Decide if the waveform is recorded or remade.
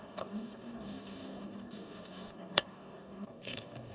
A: remade